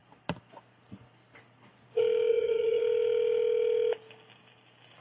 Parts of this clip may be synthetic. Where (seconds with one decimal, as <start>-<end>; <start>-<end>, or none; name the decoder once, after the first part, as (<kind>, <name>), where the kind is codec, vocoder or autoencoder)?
2.3-2.8 (vocoder, HiFi-GAN)